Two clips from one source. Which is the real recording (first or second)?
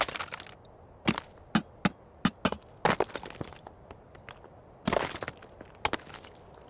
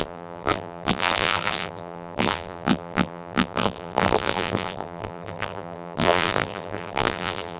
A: first